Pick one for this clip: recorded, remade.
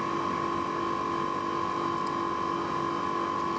recorded